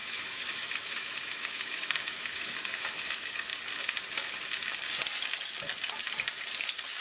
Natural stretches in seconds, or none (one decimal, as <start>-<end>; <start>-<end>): 3.5-7.0